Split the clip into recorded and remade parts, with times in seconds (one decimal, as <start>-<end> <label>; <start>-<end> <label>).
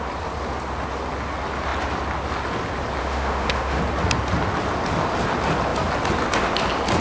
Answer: 0.0-3.0 recorded; 3.0-3.8 remade; 3.8-7.0 recorded